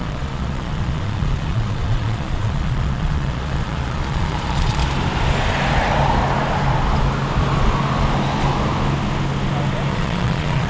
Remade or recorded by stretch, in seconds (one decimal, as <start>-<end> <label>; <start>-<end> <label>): 0.0-4.8 remade; 4.8-9.9 recorded; 9.9-10.7 remade